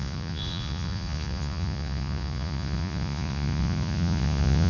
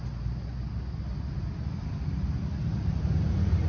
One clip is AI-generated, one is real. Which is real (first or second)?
second